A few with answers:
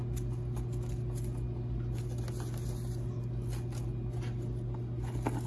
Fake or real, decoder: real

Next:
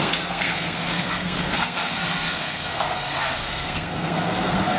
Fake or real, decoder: fake, codec, SNAC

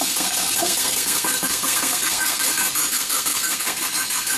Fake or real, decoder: fake, codec, SNAC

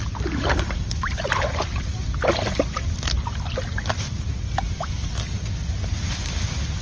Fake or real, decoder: real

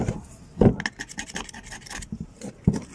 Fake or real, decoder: real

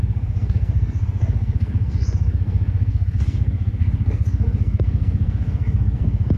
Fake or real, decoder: fake, codec, SNAC